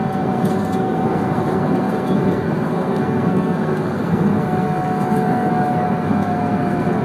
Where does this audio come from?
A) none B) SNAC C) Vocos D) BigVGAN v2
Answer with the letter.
B